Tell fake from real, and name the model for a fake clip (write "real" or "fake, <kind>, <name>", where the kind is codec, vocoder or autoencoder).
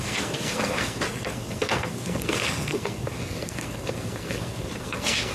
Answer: fake, codec, SNAC